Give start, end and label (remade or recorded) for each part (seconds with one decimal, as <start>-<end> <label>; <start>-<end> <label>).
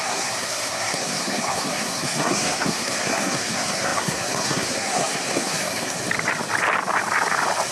0.0-6.0 remade; 6.0-7.7 recorded